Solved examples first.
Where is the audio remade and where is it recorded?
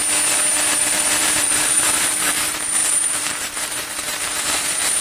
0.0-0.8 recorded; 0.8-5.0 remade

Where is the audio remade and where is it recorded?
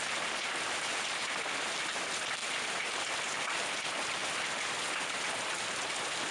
0.0-6.3 recorded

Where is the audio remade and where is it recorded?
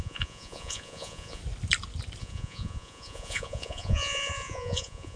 0.0-1.4 remade; 1.4-2.2 recorded; 2.2-5.2 remade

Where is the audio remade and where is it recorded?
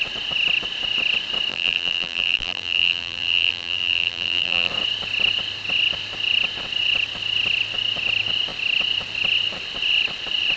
0.0-1.5 recorded; 1.5-4.7 remade; 4.7-10.6 recorded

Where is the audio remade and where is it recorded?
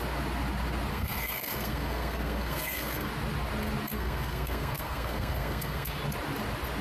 0.0-0.9 recorded; 0.9-3.1 remade; 3.1-3.9 recorded; 3.9-6.0 remade; 6.0-6.8 recorded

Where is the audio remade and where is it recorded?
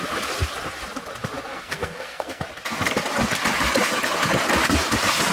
0.0-1.5 recorded; 1.5-2.4 remade; 2.4-5.3 recorded